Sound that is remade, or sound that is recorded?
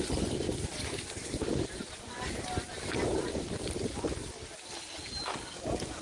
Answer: recorded